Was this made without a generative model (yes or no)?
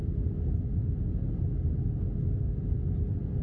yes